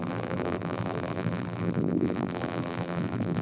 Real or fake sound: fake